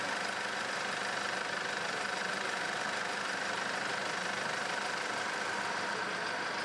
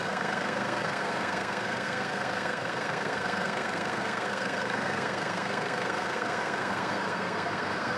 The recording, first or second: first